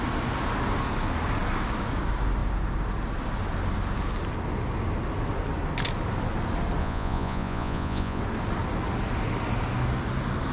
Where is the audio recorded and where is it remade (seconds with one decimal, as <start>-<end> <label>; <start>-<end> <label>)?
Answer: 0.0-6.8 recorded; 6.8-8.2 remade; 8.2-10.5 recorded